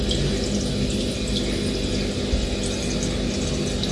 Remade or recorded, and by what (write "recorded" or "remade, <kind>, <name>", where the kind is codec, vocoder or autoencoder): recorded